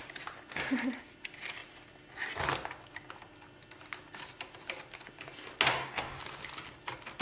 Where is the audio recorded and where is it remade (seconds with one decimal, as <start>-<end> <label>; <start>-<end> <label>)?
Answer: 0.0-5.7 recorded; 5.7-6.2 remade; 6.2-7.2 recorded